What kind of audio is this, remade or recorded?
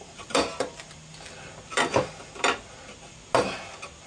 recorded